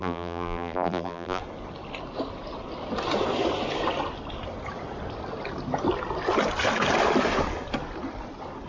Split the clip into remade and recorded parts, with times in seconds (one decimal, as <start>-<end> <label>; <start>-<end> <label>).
0.0-1.4 remade; 1.4-8.7 recorded